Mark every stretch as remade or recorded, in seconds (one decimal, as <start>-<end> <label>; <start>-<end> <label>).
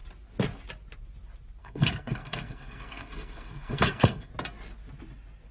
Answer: 0.0-1.6 recorded; 1.6-4.3 remade; 4.3-5.5 recorded